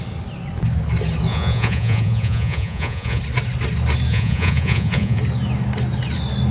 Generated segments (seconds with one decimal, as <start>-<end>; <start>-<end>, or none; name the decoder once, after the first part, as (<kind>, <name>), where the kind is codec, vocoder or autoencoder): 1.3-3.2 (vocoder, Vocos); 4.1-5.2